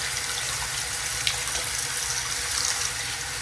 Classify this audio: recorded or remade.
recorded